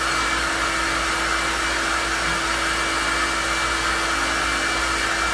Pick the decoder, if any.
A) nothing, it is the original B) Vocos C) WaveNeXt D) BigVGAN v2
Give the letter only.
A